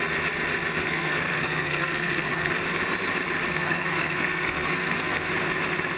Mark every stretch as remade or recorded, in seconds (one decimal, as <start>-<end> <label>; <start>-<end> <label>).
0.0-0.8 recorded; 0.8-2.5 remade; 2.5-3.5 recorded; 3.5-5.3 remade; 5.3-6.0 recorded

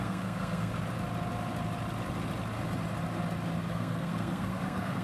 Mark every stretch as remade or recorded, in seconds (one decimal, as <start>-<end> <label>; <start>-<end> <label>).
0.0-0.7 remade; 0.7-3.7 recorded; 3.7-5.0 remade

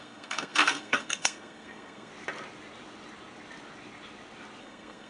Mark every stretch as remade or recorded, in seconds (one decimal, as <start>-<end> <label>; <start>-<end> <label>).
0.0-2.1 remade; 2.1-4.6 recorded; 4.6-5.1 remade